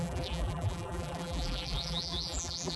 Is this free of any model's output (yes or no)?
no